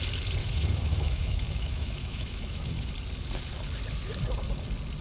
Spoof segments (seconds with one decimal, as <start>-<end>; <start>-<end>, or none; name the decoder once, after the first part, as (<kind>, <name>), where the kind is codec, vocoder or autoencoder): 0.4-2.9 (autoencoder, DAC-VAE)